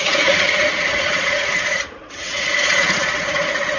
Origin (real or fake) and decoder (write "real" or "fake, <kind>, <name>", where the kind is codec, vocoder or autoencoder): fake, vocoder, Vocos